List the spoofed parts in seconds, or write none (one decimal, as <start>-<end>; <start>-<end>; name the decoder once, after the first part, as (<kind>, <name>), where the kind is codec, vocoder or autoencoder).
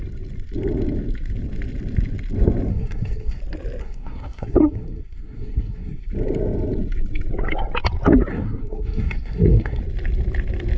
2.7-3.4 (codec, SNAC); 3.8-6.1; 8.3-9.8